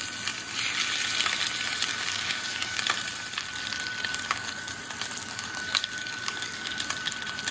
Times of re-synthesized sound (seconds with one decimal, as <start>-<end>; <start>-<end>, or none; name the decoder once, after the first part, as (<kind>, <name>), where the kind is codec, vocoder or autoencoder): 1.9-2.8 (codec, DAC); 4.1-4.7; 5.2-6.8

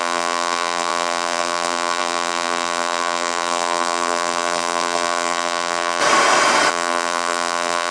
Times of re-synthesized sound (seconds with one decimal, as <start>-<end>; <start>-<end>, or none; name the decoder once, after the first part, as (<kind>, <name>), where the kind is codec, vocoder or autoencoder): 0.0-6.0 (vocoder, BigVGAN v2); 6.7-7.9

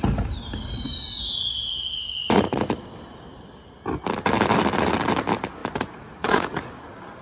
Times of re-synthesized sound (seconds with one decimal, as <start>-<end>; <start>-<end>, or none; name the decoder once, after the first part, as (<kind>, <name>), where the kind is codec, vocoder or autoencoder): 2.2-2.8 (vocoder, Vocos); 5.6-6.7

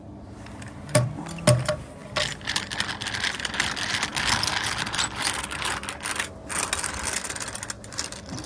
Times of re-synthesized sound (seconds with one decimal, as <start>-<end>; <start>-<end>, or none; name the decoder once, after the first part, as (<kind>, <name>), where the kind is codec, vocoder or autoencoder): none

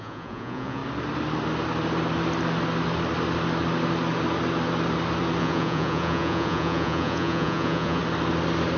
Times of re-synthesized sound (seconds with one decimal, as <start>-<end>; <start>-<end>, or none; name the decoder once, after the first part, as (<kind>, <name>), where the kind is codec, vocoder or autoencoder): 0.0-0.8 (vocoder, Vocos); 5.4-8.0

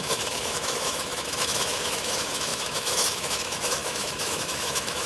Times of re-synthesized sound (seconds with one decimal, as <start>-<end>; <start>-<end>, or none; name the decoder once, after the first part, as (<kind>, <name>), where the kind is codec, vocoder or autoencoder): 0.0-5.1 (autoencoder, DAC-VAE)

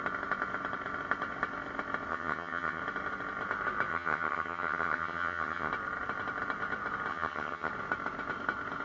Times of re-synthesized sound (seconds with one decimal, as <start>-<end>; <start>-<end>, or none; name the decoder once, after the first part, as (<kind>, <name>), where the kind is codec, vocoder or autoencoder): 2.1-2.8 (vocoder, HiFi-GAN); 3.9-5.7; 7.1-7.7

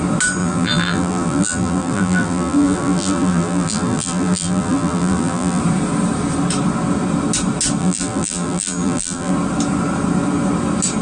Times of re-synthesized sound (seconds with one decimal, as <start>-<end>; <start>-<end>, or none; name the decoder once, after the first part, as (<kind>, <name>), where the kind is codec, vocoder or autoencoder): 0.4-5.6 (vocoder, BigVGAN v2); 7.8-9.3